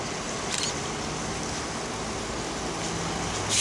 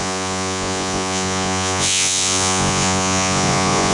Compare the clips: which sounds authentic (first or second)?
first